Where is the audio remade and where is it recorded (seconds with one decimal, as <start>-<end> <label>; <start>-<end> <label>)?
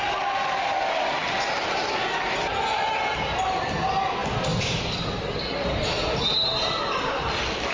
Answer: 0.0-7.7 recorded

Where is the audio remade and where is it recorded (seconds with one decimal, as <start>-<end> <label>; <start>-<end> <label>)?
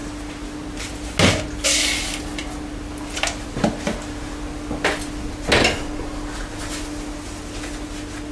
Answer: 0.0-8.3 recorded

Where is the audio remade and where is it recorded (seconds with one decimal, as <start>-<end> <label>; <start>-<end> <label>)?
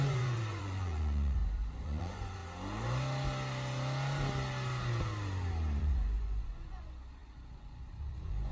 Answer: 0.0-2.4 remade; 2.4-5.8 recorded; 5.8-8.5 remade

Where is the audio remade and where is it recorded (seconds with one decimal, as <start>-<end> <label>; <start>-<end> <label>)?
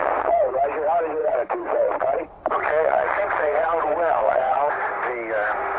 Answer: 0.0-0.6 remade; 0.6-1.2 recorded; 1.2-4.7 remade; 4.7-5.8 recorded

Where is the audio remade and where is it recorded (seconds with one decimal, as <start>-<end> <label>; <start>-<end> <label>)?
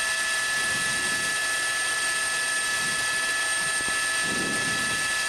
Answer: 0.0-5.3 recorded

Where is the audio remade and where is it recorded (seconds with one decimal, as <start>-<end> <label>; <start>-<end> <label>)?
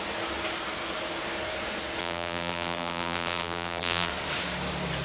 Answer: 0.0-2.0 recorded; 2.0-4.1 remade; 4.1-5.0 recorded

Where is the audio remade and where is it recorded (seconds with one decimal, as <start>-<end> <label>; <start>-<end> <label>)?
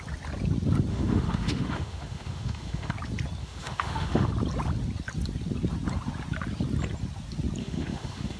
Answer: 0.0-0.9 recorded; 0.9-2.9 remade; 2.9-3.4 recorded; 3.4-4.3 remade; 4.3-7.6 recorded; 7.6-8.4 remade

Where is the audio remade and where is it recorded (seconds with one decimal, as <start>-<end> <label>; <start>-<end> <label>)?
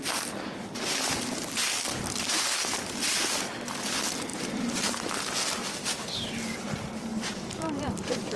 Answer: 0.0-4.3 recorded; 4.3-5.3 remade; 5.3-7.1 recorded; 7.1-8.4 remade